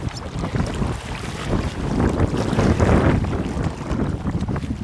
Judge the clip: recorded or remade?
recorded